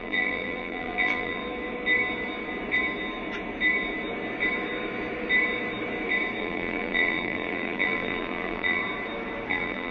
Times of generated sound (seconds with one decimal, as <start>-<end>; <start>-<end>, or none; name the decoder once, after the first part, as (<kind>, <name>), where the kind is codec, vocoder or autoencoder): 0.0-1.4 (vocoder, BigVGAN v2); 6.4-8.8; 9.5-9.9